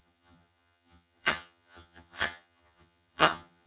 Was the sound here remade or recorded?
remade